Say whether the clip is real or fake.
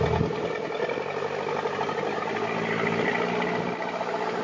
real